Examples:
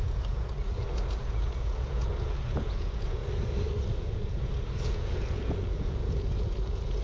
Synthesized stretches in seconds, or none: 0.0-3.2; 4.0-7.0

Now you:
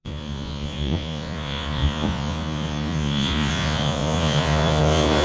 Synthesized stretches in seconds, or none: 0.0-5.2

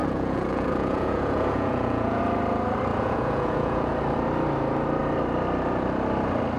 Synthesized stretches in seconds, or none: 0.0-2.2; 2.9-3.9

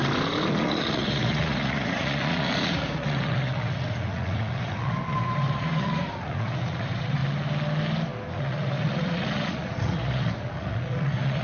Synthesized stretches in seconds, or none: 0.5-7.2; 8.4-11.4

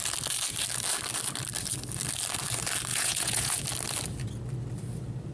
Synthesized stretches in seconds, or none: 2.9-3.6

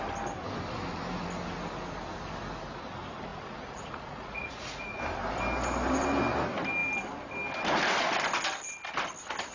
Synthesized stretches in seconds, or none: 3.3-5.0

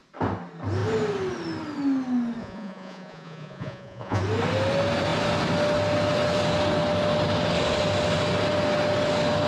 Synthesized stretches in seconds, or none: 2.4-4.2